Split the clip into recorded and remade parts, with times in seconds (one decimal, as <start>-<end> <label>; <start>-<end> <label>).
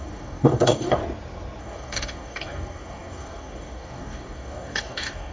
0.0-1.0 remade; 1.0-1.6 recorded; 1.6-5.3 remade